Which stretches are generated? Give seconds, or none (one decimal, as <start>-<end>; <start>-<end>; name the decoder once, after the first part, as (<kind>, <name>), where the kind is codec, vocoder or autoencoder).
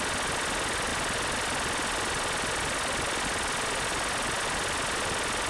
none